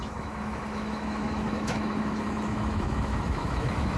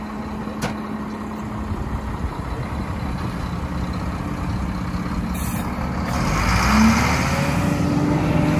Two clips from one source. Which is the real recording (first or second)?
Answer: second